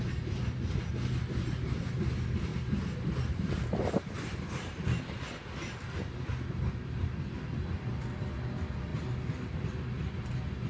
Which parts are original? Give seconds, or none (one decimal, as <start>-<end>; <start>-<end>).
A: 0.0-10.7